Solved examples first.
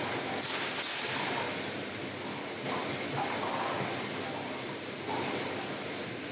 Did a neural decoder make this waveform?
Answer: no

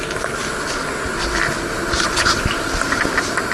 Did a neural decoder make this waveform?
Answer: no